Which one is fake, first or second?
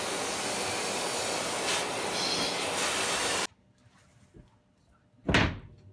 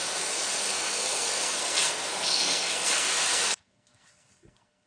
second